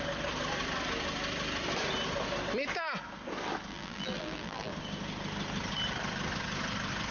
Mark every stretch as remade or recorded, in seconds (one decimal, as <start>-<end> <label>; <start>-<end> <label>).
0.0-3.7 recorded; 3.7-4.7 remade; 4.7-7.1 recorded